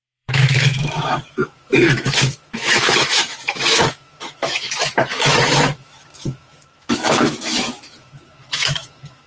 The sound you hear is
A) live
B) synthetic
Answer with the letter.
B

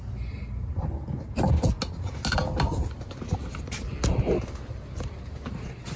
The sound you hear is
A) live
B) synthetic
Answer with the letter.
A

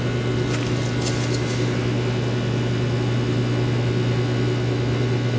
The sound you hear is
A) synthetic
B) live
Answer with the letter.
B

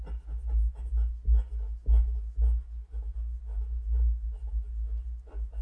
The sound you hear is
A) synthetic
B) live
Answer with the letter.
B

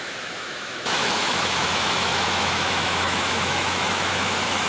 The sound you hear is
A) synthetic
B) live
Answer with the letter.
A